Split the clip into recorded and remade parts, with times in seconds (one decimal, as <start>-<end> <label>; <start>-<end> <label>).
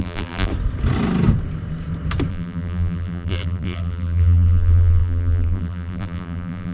0.0-0.5 remade; 0.5-2.3 recorded; 2.3-6.7 remade